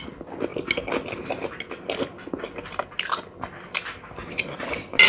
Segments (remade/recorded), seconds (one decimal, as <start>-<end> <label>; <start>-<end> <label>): 0.0-5.1 recorded